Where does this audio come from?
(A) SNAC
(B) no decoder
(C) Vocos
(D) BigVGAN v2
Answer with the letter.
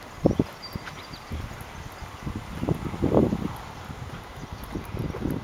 B